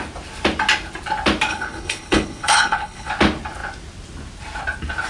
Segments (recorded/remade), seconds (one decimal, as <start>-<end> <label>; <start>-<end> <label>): 0.0-1.5 recorded; 1.5-3.1 remade; 3.1-5.1 recorded